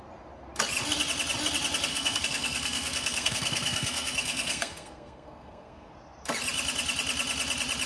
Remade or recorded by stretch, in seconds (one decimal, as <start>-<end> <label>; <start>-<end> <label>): 0.0-1.9 recorded; 1.9-5.9 remade; 5.9-7.9 recorded